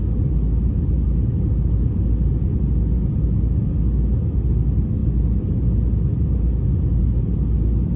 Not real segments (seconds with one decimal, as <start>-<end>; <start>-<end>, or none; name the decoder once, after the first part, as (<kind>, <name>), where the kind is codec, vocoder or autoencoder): none